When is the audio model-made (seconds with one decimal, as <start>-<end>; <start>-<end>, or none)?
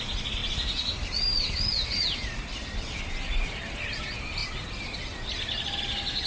none